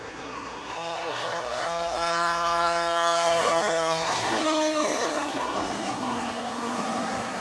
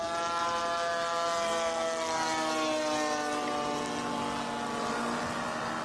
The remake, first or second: first